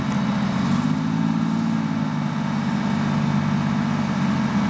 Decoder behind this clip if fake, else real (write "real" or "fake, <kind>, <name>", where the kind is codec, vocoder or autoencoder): real